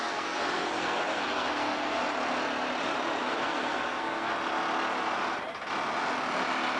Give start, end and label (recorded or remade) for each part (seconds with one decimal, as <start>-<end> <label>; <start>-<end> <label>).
0.0-2.0 remade; 2.0-3.2 recorded; 3.2-4.3 remade; 4.3-6.8 recorded